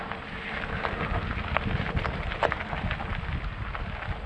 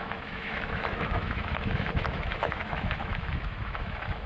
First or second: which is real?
first